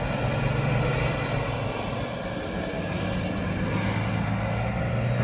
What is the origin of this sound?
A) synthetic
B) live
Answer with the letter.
B